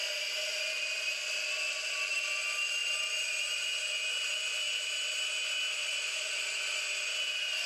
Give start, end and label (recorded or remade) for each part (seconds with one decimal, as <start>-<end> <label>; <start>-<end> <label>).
0.0-7.7 recorded